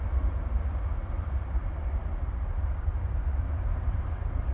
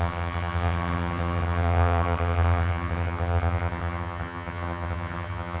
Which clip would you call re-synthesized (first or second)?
second